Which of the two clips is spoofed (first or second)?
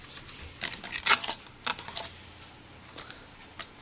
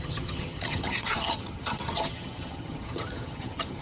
second